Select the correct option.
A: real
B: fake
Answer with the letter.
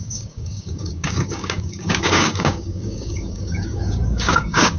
B